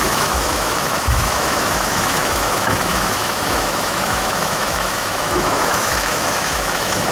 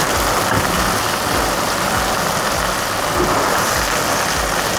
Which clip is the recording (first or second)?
second